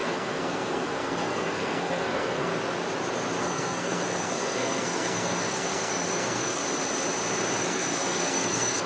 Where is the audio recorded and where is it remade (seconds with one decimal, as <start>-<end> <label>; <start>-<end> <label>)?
0.0-2.5 remade; 2.5-3.4 recorded; 3.4-6.6 remade; 6.6-7.6 recorded; 7.6-8.9 remade